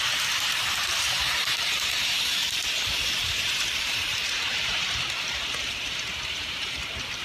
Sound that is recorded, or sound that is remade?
remade